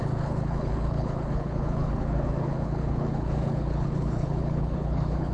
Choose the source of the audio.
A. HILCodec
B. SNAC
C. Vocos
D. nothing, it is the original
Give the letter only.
A